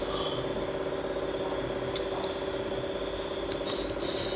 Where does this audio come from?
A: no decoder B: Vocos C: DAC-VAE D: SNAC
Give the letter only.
A